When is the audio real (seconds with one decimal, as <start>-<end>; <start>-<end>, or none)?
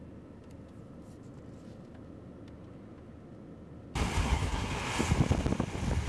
0.0-4.2; 4.7-6.1